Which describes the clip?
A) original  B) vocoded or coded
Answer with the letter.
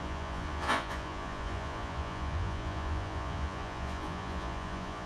B